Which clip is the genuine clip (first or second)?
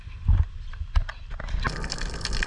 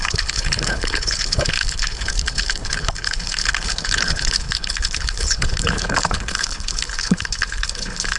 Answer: first